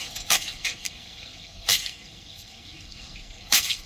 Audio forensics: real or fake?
fake